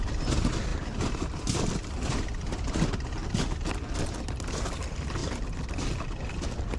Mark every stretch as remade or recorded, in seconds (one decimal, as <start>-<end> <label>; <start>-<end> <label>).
0.0-0.7 recorded; 0.7-2.5 remade; 2.5-3.2 recorded; 3.2-3.7 remade; 3.7-5.2 recorded; 5.2-6.3 remade; 6.3-6.8 recorded